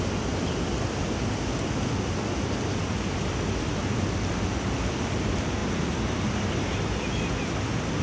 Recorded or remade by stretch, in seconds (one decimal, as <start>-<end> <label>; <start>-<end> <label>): 0.0-8.0 recorded